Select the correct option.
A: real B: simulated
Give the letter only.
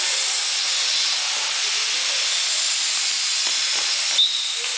A